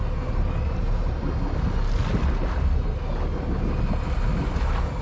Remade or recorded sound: recorded